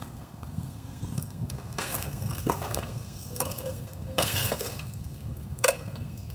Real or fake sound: fake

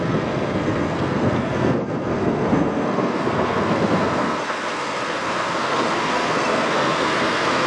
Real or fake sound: fake